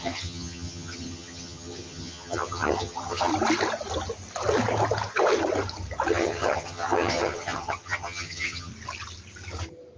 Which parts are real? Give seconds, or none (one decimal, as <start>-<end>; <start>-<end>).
3.3-6.1; 8.7-10.0